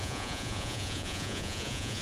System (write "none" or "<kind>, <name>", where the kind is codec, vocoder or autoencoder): vocoder, Vocos